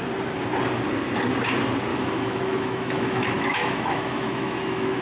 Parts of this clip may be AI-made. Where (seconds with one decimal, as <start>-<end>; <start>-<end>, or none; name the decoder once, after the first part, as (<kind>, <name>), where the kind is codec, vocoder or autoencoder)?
1.9-5.0 (autoencoder, DAC-VAE)